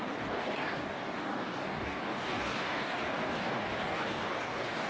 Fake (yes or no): yes